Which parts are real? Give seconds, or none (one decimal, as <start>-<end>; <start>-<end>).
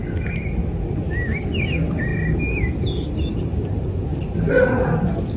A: 0.0-4.1; 4.7-5.4